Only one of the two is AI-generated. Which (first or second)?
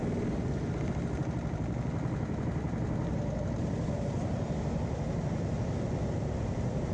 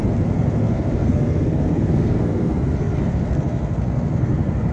second